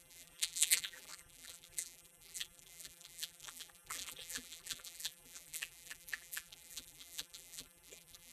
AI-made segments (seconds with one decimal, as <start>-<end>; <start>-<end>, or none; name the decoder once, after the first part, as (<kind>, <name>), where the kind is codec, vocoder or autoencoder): 0.0-8.3 (vocoder, BigVGAN v2)